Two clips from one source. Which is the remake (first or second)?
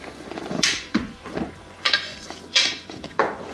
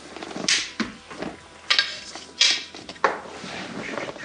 first